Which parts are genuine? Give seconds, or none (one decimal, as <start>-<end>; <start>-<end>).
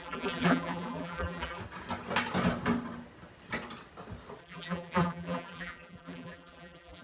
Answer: 1.6-4.4